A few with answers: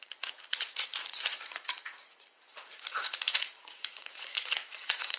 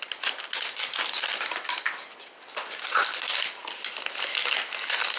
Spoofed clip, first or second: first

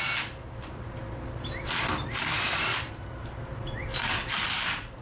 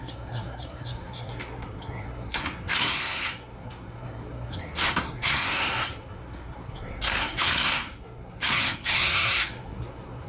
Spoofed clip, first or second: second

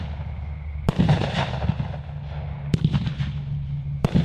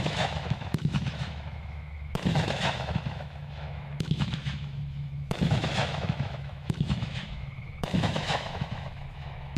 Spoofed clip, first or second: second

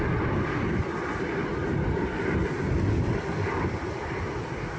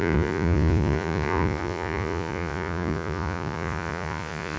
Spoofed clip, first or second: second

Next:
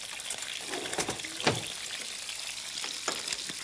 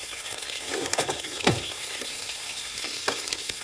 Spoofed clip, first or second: second